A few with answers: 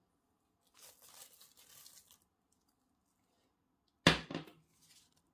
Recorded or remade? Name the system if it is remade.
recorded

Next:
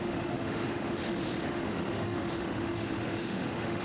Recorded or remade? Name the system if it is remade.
remade, autoencoder, DAC-VAE